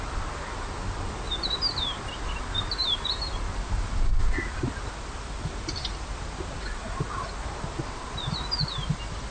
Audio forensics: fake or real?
real